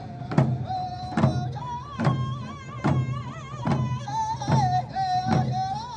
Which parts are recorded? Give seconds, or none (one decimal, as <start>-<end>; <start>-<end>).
0.0-6.0